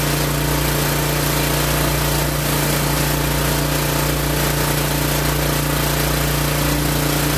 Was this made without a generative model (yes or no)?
yes